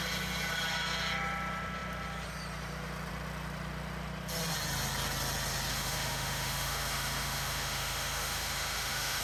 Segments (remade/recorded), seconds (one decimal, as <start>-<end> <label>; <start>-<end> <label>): 0.0-5.7 recorded; 5.7-9.2 remade